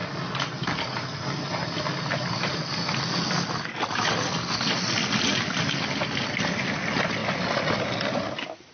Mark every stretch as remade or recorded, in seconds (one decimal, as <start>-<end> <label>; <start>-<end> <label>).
0.0-8.7 recorded